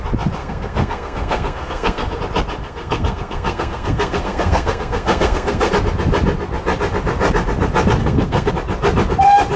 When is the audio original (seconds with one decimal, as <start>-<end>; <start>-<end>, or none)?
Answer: 0.0-0.4; 2.2-2.6; 5.7-8.0; 8.5-9.6